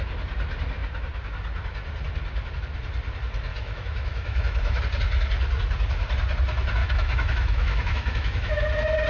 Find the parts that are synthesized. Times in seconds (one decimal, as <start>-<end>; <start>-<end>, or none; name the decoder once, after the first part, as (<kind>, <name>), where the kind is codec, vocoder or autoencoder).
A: 3.5-4.8 (autoencoder, DAC-VAE); 6.8-8.5